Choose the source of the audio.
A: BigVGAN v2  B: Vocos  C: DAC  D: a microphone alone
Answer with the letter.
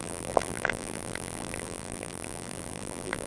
A